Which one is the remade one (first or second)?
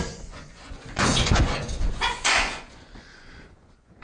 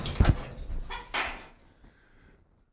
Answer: first